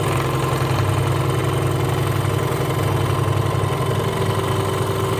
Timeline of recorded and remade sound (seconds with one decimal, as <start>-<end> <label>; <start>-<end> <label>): 0.0-5.2 recorded